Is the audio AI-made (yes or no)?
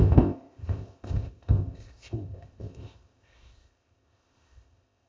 yes